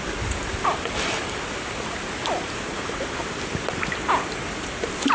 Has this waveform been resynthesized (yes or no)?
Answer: no